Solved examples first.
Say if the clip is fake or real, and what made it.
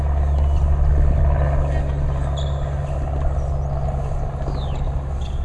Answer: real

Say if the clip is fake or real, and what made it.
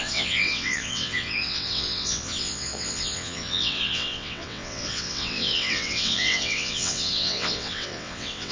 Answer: fake, vocoder, WaveNeXt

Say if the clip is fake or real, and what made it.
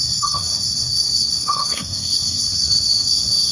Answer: fake, codec, SNAC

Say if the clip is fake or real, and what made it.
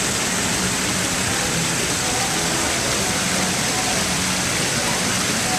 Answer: real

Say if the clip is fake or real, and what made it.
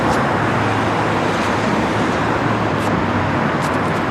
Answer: real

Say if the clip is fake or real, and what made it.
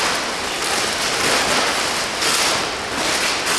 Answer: real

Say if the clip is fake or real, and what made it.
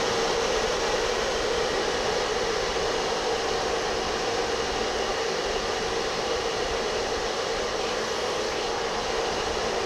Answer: real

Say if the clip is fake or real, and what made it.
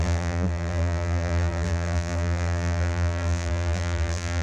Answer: fake, vocoder, BigVGAN v2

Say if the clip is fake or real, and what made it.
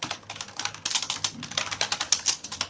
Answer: real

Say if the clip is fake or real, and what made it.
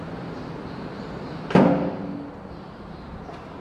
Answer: real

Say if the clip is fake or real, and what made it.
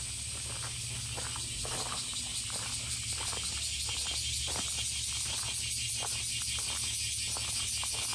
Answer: real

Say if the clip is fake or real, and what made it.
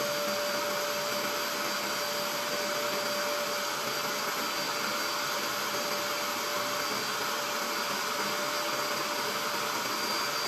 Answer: real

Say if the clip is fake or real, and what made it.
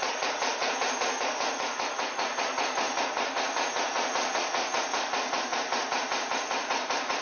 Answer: fake, vocoder, Vocos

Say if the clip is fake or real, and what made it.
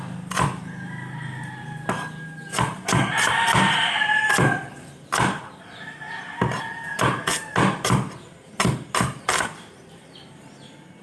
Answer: real